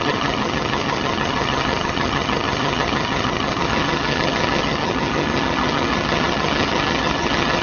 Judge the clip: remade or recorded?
remade